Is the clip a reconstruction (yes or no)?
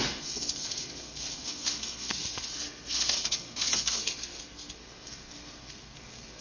yes